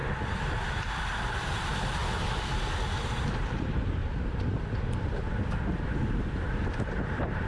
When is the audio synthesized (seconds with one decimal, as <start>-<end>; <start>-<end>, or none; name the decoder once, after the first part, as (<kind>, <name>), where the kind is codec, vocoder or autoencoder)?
1.3-2.0 (vocoder, BigVGAN v2); 3.0-4.0; 6.1-7.5